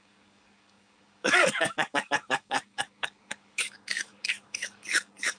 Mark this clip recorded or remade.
remade